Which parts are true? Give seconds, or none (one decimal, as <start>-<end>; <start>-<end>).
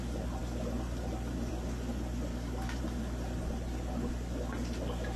0.0-2.3; 2.8-5.2